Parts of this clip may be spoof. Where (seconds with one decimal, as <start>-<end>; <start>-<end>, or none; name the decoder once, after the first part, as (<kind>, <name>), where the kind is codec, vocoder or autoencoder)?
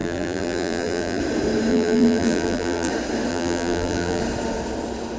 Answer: 0.0-1.2 (vocoder, BigVGAN v2); 1.7-2.9; 3.3-4.2